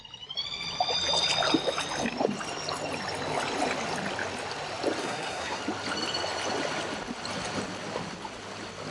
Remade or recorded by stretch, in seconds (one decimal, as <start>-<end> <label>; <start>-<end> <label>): 0.0-5.0 recorded; 5.0-5.6 remade; 5.6-8.9 recorded